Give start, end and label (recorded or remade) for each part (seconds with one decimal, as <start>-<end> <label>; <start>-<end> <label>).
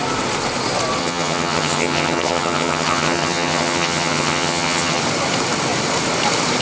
0.0-1.0 recorded; 1.0-5.0 remade; 5.0-6.6 recorded